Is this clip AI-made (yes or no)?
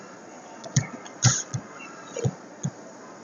yes